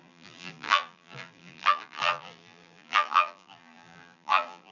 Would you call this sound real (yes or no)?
no